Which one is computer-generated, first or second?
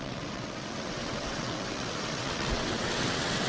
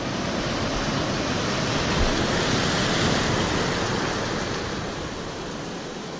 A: first